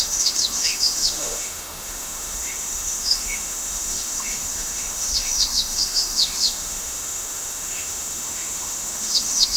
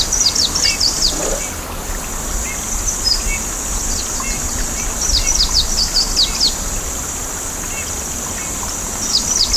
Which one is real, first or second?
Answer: second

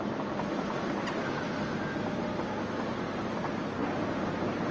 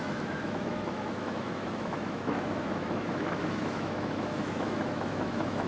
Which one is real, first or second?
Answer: first